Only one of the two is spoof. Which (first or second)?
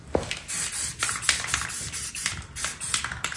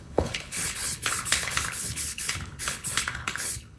second